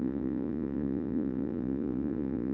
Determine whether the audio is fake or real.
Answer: fake